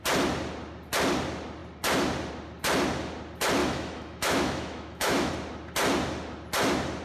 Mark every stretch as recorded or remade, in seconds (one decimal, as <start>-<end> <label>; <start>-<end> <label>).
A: 0.0-3.6 recorded; 3.6-5.3 remade; 5.3-7.0 recorded